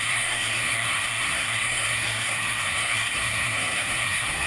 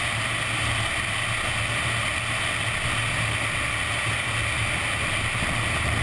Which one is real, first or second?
second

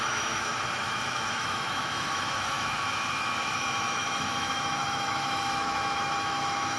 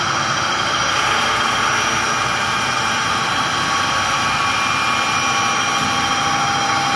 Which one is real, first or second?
second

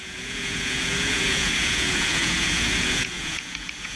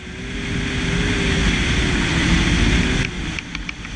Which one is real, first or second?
second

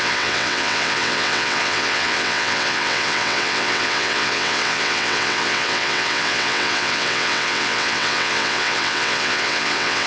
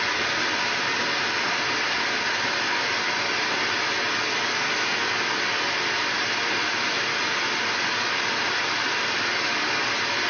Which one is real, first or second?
second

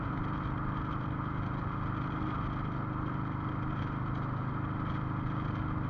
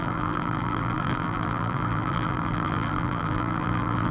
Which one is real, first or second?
first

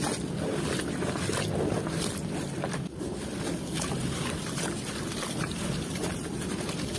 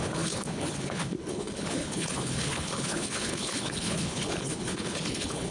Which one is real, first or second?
first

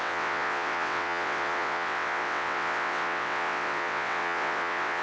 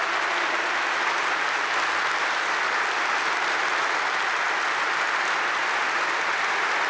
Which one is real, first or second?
second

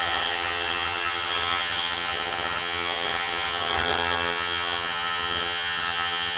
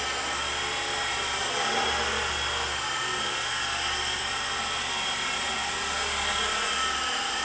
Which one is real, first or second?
second